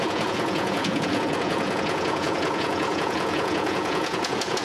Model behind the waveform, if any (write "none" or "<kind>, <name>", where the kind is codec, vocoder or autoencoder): vocoder, Vocos